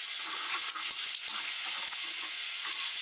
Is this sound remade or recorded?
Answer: remade